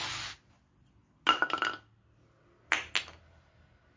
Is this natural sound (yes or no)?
yes